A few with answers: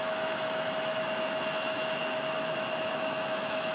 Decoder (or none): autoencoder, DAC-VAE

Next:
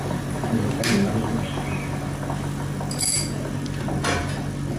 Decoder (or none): none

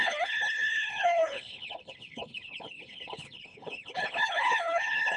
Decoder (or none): codec, HILCodec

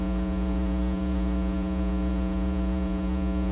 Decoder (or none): vocoder, Vocos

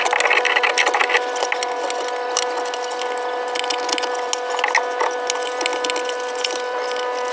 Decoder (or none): none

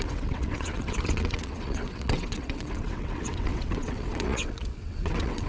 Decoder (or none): vocoder, WaveNeXt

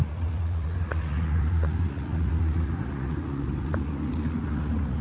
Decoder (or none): vocoder, Vocos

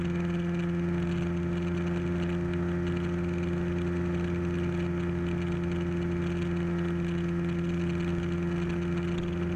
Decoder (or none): none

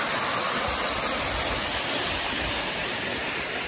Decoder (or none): none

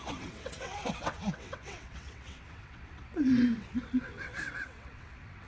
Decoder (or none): vocoder, WaveNeXt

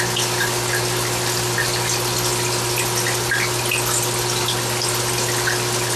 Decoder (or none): none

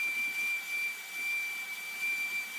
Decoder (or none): none